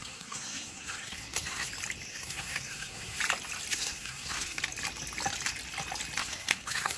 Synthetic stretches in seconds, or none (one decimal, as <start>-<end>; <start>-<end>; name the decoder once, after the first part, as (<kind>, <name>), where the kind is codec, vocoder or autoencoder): 0.0-1.7 (codec, SNAC); 2.1-3.2; 3.7-4.6; 6.2-7.0

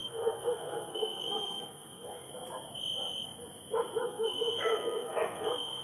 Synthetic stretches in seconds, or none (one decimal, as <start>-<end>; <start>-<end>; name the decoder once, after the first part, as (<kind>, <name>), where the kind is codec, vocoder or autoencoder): 0.0-2.3 (codec, SNAC); 4.0-5.8

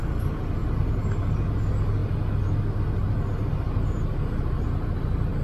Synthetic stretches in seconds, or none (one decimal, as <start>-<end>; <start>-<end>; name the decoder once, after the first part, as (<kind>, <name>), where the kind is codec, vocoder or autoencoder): none